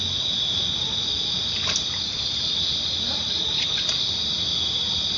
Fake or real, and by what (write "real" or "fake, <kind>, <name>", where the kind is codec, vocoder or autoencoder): real